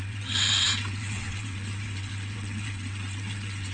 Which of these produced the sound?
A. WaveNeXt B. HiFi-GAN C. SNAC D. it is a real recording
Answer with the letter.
A